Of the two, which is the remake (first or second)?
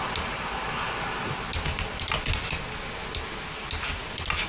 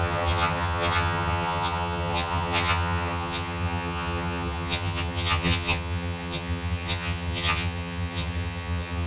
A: second